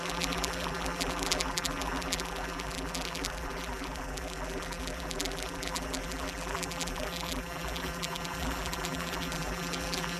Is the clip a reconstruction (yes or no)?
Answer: yes